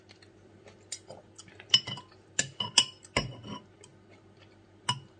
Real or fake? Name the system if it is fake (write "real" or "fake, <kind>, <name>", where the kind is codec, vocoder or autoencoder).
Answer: real